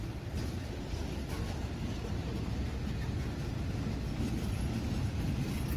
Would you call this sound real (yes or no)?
yes